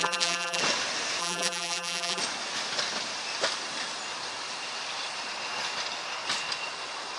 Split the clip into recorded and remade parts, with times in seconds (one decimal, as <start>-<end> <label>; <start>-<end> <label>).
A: 0.0-0.6 remade; 0.6-1.2 recorded; 1.2-2.2 remade; 2.2-7.2 recorded